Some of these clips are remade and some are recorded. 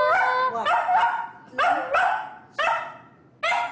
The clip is recorded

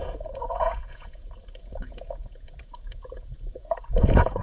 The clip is remade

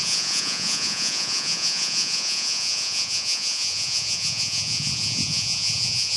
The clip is remade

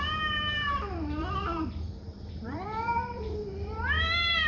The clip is remade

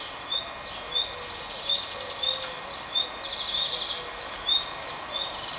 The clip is recorded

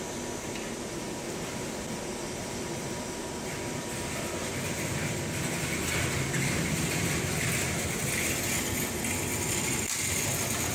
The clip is recorded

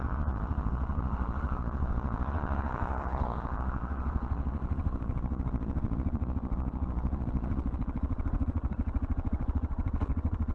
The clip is remade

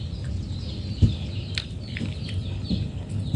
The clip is recorded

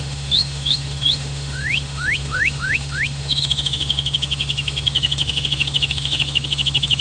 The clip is remade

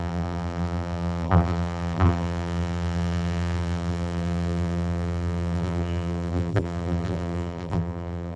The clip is remade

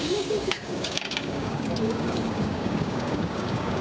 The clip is remade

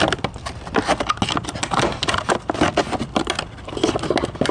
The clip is recorded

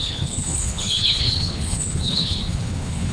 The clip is remade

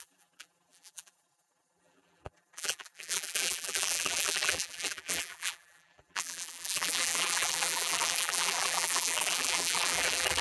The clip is remade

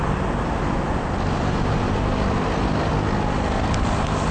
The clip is recorded